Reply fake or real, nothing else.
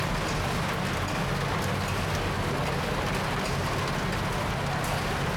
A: real